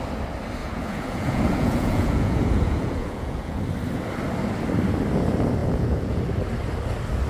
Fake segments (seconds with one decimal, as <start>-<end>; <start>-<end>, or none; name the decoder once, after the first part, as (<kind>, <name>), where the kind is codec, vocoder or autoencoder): 0.6-3.6 (vocoder, Vocos); 5.6-6.2